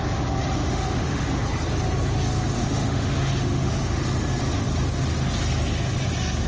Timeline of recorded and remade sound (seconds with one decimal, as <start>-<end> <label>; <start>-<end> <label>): 0.0-0.6 recorded; 0.6-1.4 remade; 1.4-2.6 recorded; 2.6-4.0 remade; 4.0-6.5 recorded